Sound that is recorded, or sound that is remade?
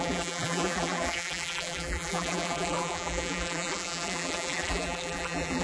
remade